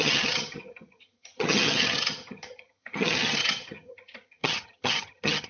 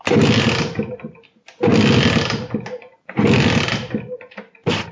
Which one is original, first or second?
second